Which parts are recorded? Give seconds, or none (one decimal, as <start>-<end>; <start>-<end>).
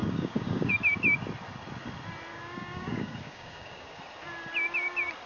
0.7-2.3; 4.0-5.3